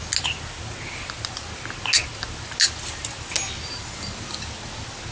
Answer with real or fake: real